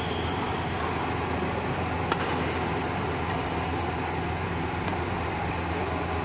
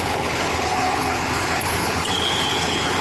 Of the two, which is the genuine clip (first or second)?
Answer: first